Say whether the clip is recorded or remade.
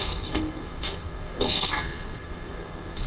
remade